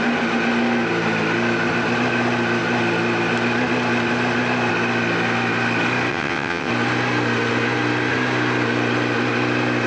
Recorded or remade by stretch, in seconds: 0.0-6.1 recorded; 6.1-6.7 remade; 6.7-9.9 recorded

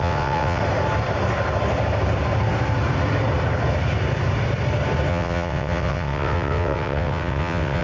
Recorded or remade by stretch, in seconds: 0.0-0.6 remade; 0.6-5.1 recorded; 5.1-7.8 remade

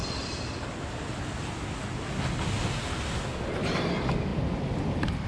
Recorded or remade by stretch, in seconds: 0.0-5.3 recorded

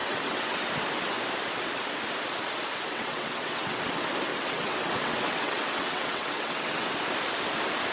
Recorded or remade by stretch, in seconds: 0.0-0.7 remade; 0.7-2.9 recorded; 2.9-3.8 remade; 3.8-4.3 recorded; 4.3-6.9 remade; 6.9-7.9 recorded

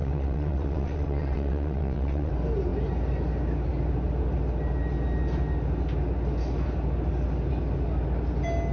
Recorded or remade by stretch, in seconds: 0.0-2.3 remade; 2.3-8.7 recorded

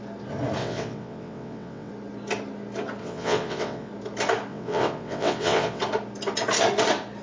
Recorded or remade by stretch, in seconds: 0.0-0.6 recorded; 0.6-1.9 remade; 1.9-3.0 recorded; 3.0-3.9 remade; 3.9-4.5 recorded; 4.5-5.8 remade; 5.8-7.2 recorded

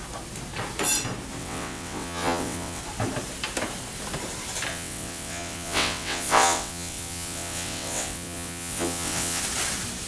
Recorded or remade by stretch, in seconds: 0.0-1.4 recorded; 1.4-2.8 remade; 2.8-4.7 recorded; 4.7-9.4 remade; 9.4-10.1 recorded

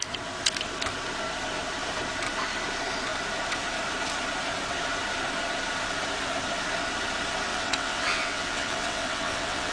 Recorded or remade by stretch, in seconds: 0.0-7.5 recorded; 7.5-9.7 remade